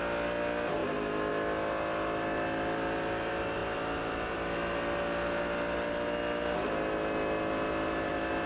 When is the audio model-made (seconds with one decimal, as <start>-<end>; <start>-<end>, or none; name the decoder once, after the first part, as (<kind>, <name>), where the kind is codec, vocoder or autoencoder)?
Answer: none